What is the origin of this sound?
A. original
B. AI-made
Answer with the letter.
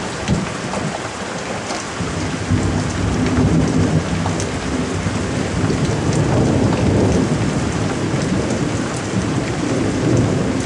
A